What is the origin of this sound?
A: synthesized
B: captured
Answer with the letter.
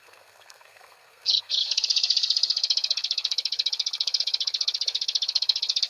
A